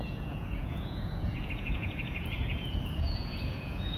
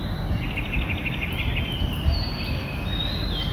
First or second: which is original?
second